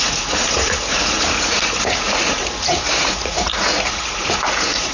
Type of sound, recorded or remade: remade